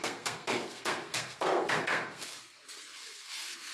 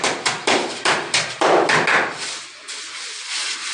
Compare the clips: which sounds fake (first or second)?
first